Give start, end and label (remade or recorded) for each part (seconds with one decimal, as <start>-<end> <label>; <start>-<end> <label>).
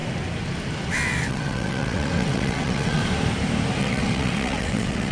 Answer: 0.0-1.3 recorded; 1.3-3.0 remade; 3.0-3.8 recorded; 3.8-5.1 remade